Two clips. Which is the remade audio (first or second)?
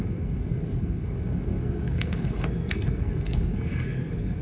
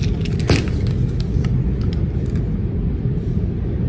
first